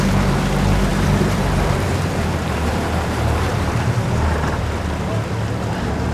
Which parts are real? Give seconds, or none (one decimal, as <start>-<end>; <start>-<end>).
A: 0.0-0.9; 4.6-6.1